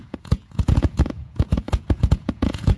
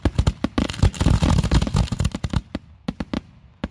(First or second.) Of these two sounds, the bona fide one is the second